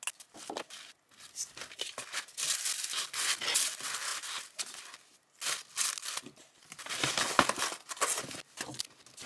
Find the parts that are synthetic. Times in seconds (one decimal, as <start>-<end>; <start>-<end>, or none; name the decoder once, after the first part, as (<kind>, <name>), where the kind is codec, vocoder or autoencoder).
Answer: none